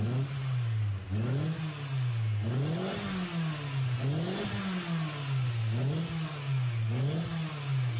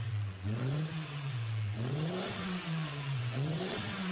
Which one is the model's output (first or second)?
second